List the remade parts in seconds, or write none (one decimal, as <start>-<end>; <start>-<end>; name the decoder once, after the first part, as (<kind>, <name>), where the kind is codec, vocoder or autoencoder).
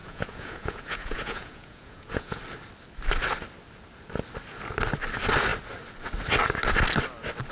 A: 0.0-2.4 (vocoder, Vocos)